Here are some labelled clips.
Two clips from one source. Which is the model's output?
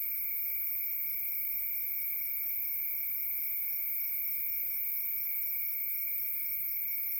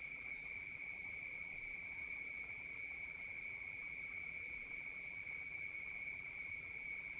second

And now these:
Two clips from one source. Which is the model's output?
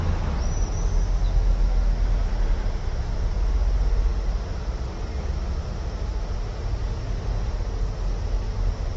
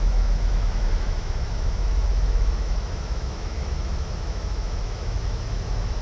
second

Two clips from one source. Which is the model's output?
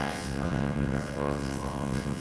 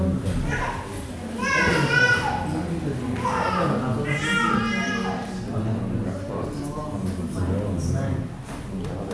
first